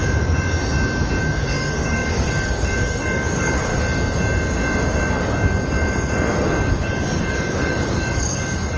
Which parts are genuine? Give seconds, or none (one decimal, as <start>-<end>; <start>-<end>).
0.0-1.2; 3.7-6.7